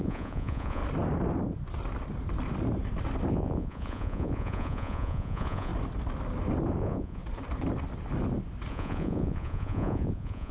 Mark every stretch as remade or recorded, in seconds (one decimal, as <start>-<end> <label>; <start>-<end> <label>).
0.0-0.8 remade; 0.8-3.3 recorded; 3.3-5.7 remade; 5.7-6.8 recorded; 6.8-7.2 remade; 7.2-8.7 recorded; 8.7-10.5 remade